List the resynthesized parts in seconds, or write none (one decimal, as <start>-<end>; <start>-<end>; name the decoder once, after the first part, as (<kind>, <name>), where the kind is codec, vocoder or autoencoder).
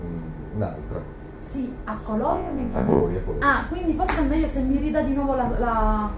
2.3-3.0 (vocoder, Vocos)